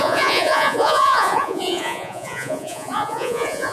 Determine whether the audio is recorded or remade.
remade